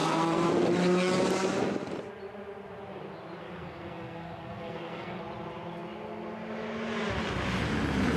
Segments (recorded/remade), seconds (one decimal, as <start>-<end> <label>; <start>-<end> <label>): 0.0-0.5 remade; 0.5-3.4 recorded; 3.4-5.2 remade; 5.2-8.2 recorded